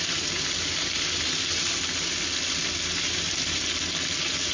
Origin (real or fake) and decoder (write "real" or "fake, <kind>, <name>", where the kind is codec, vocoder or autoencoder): real